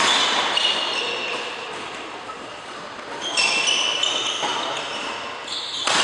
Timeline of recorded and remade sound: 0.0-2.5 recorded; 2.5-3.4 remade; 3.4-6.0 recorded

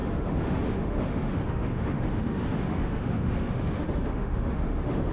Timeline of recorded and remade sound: 0.0-5.1 remade

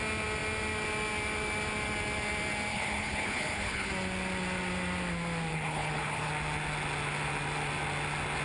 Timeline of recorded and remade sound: 0.0-2.7 recorded; 2.7-3.9 remade; 3.9-5.5 recorded; 5.5-6.3 remade; 6.3-8.4 recorded